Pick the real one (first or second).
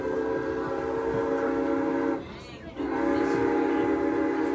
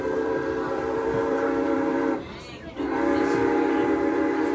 first